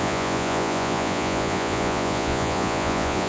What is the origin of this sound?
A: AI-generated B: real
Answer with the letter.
A